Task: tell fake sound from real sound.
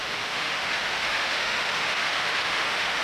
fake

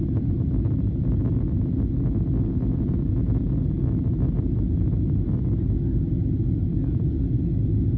real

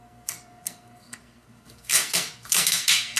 fake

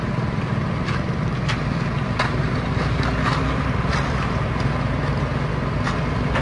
real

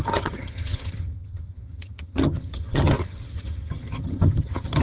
fake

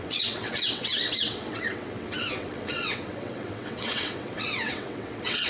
fake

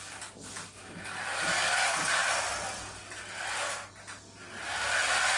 real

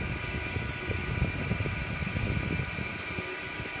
real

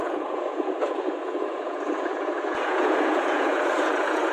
fake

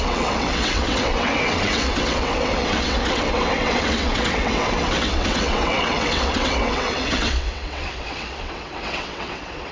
fake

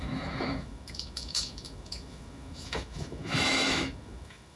fake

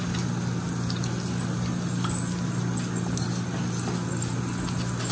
real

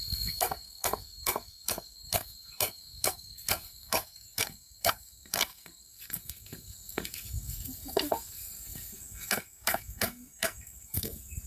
fake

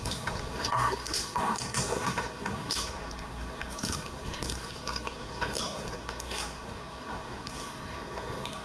fake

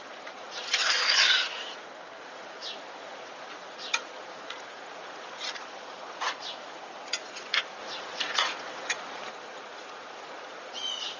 fake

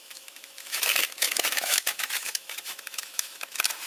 fake